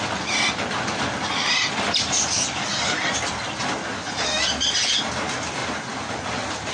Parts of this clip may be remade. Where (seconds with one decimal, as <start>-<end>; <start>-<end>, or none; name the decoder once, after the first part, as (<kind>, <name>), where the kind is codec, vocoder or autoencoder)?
none